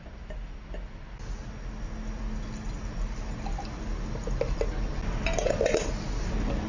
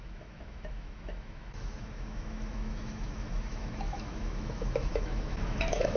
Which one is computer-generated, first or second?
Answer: second